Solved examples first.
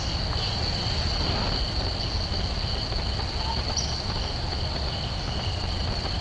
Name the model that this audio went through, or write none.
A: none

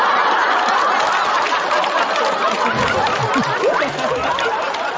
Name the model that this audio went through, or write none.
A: none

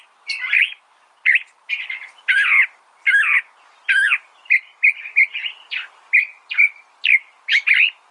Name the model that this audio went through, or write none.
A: vocoder, BigVGAN v2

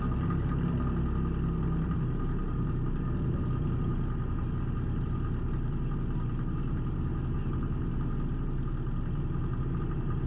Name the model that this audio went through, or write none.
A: none